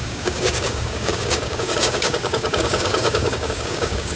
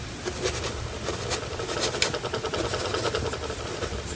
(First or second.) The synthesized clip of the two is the first